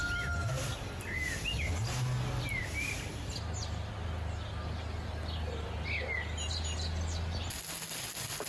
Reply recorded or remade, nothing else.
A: recorded